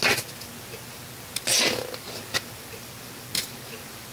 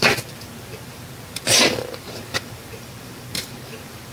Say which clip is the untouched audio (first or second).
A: first